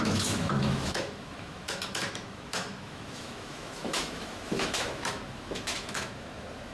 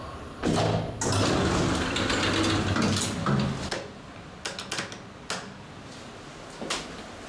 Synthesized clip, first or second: first